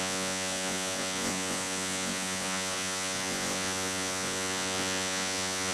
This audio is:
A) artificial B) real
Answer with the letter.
A